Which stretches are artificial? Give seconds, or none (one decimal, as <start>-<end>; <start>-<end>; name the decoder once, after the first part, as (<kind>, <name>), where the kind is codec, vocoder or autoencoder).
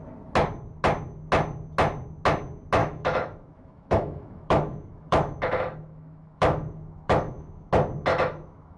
2.8-7.7 (autoencoder, DAC-VAE); 8.1-8.8